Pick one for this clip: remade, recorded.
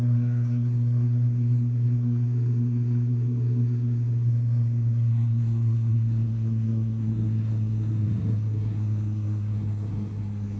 remade